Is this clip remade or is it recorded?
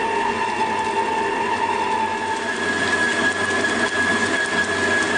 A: recorded